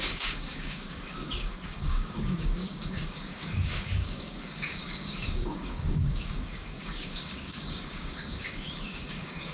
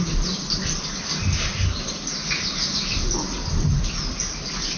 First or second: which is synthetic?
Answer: first